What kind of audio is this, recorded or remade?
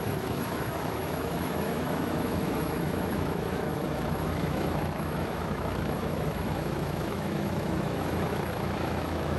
remade